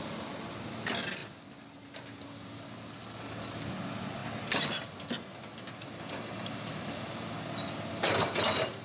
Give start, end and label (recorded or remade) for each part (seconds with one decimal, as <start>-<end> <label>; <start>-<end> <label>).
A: 0.0-8.8 recorded